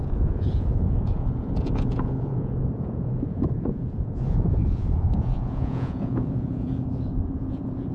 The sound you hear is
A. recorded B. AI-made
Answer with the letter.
B